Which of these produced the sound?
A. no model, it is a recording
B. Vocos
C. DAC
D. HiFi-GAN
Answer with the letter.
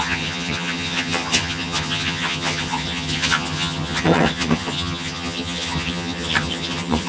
D